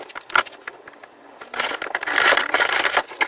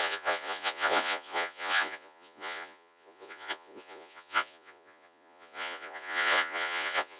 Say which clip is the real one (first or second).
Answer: first